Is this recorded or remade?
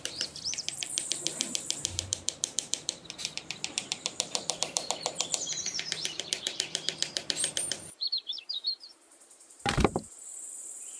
remade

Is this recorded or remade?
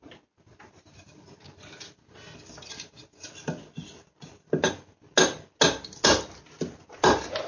recorded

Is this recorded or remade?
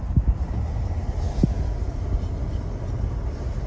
recorded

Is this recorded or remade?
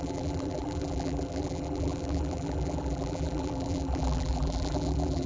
remade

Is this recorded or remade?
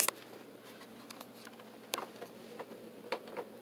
recorded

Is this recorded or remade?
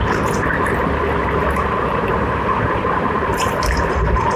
remade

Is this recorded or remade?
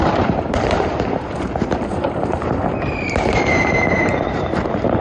remade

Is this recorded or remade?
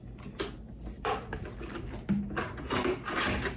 recorded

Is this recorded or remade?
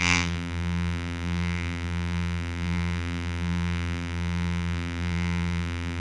remade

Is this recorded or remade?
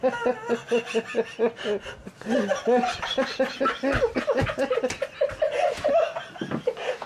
recorded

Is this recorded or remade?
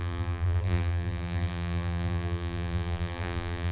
remade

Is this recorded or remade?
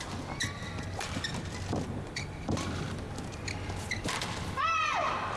remade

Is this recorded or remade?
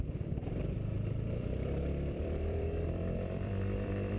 remade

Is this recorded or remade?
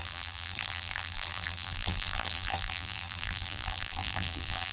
remade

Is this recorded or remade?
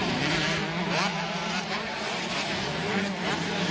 remade